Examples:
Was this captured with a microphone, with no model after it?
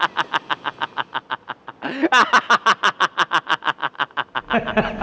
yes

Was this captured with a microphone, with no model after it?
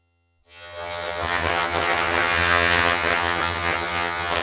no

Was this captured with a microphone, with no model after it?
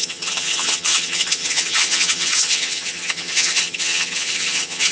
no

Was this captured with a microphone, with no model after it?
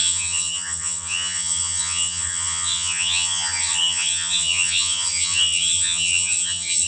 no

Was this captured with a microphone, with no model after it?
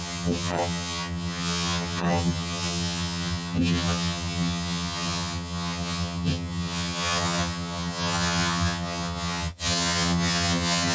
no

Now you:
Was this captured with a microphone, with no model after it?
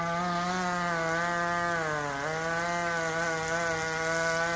yes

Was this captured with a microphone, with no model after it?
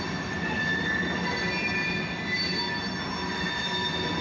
yes